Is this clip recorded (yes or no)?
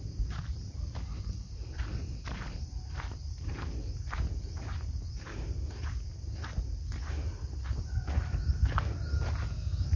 yes